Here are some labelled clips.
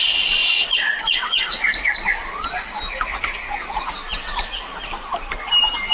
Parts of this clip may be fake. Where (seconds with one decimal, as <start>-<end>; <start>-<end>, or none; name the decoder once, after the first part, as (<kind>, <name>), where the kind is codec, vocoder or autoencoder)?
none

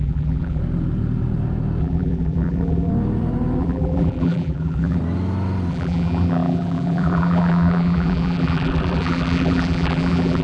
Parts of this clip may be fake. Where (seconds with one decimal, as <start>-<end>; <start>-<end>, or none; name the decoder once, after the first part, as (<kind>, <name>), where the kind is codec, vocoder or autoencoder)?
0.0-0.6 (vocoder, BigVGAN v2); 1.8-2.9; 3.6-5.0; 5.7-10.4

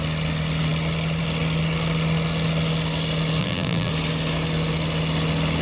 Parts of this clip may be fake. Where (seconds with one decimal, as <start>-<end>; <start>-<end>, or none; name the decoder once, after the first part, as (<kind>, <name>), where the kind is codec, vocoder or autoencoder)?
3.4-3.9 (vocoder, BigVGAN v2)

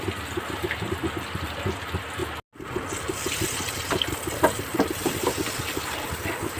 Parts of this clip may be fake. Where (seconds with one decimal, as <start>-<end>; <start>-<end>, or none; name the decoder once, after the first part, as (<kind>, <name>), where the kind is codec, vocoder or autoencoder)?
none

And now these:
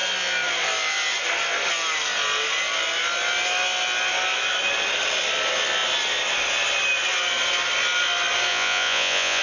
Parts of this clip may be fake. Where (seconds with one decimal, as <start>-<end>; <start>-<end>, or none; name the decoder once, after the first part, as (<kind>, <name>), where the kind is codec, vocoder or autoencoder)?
8.5-9.4 (vocoder, Vocos)